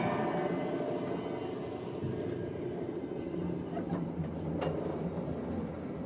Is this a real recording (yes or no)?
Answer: yes